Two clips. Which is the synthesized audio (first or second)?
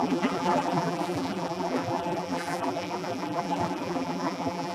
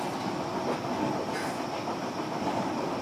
first